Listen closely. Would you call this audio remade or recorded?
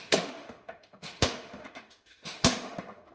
remade